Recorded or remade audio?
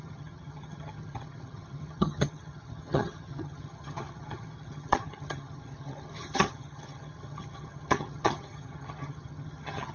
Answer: remade